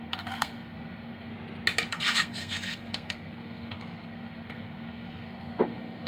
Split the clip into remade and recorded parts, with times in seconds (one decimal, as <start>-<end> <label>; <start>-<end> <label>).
0.0-1.3 remade; 1.3-1.9 recorded; 1.9-6.1 remade